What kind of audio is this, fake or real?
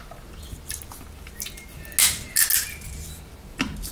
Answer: real